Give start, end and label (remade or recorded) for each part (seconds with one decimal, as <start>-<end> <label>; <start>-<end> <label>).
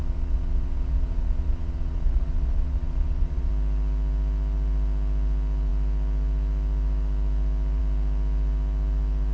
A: 0.0-3.5 remade; 3.5-9.3 recorded